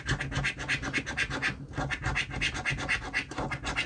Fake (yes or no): no